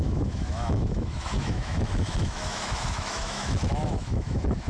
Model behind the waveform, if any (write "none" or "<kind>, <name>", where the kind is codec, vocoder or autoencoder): autoencoder, DAC-VAE